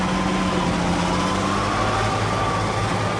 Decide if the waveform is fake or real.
real